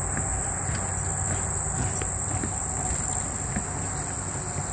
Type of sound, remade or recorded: recorded